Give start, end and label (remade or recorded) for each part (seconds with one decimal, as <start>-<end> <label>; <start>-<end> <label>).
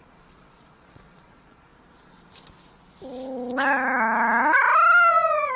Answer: 0.0-1.7 remade; 1.7-5.1 recorded; 5.1-5.6 remade